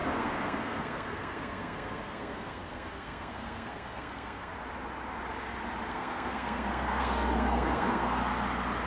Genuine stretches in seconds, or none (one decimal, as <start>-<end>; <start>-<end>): 4.5-5.9; 8.2-8.9